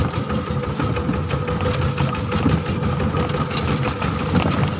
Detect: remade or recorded recorded